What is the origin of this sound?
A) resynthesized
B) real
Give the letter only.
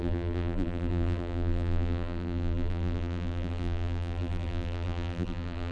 A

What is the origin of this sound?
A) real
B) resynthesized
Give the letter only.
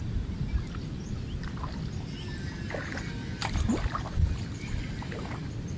A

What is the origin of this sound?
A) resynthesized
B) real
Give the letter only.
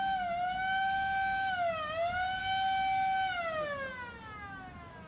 B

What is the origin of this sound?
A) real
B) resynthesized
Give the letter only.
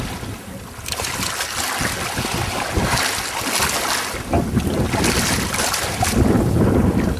A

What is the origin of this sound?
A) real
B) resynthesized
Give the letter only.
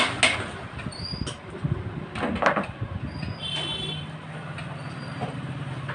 A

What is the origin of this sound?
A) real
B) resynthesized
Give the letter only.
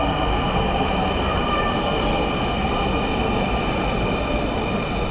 A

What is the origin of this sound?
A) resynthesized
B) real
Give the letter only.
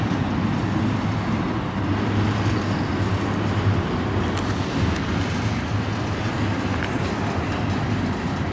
B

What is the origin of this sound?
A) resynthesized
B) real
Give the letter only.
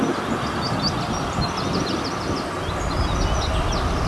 B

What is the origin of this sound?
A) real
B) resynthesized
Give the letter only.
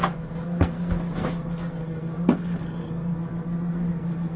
B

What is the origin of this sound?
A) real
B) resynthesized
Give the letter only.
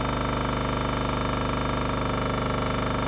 A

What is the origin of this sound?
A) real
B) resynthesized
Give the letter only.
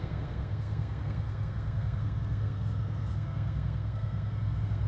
B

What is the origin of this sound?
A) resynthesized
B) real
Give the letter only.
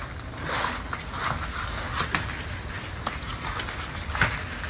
B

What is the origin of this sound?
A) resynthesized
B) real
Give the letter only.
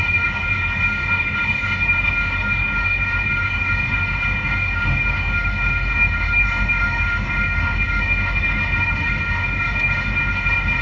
A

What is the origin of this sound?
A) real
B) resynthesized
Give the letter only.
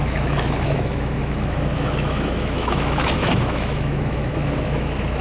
B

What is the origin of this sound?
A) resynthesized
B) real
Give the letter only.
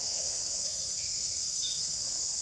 A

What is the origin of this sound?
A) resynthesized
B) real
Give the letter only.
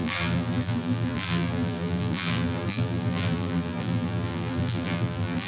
A